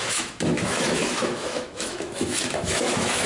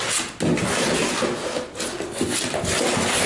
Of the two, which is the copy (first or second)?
first